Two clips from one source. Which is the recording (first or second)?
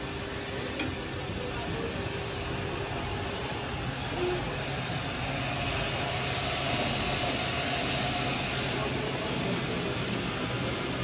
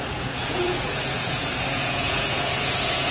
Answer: first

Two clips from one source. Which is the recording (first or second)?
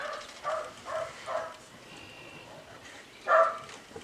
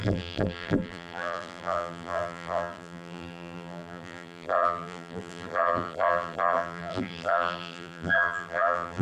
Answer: first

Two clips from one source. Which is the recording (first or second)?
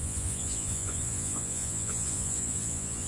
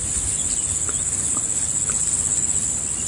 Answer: second